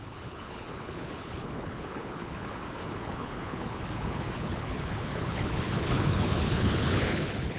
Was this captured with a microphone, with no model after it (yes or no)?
no